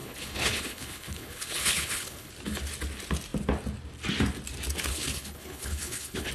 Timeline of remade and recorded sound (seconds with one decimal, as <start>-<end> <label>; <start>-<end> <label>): 0.0-2.3 remade; 2.3-4.9 recorded; 4.9-6.3 remade